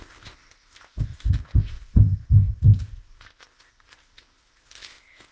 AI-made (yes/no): yes